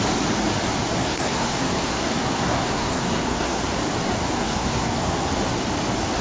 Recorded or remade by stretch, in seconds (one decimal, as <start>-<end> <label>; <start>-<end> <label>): 0.0-1.0 recorded; 1.0-3.6 remade; 3.6-4.4 recorded; 4.4-5.3 remade; 5.3-6.2 recorded